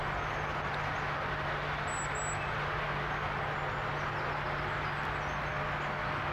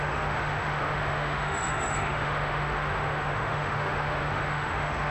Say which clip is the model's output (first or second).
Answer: second